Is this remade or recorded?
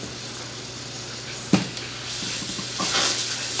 recorded